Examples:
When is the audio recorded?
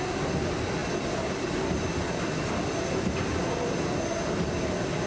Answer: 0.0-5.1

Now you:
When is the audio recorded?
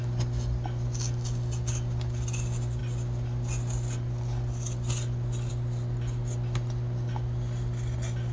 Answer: 0.0-8.3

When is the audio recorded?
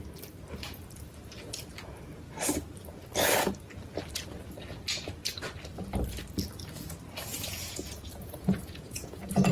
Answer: 0.0-7.3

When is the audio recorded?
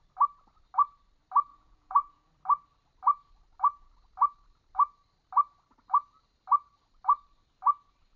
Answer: 0.0-1.5; 2.3-8.2